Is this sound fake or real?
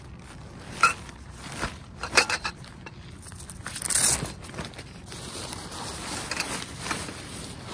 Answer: real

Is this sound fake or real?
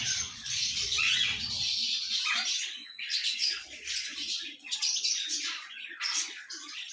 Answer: fake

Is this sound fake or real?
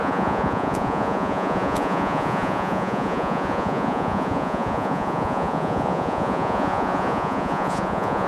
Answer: fake